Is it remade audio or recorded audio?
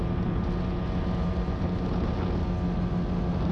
recorded